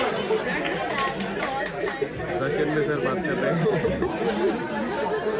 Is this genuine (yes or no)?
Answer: yes